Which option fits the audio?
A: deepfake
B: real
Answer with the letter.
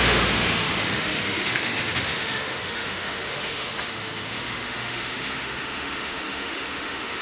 A